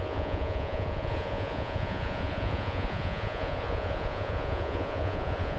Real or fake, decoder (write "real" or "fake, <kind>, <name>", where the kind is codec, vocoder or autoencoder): fake, vocoder, Vocos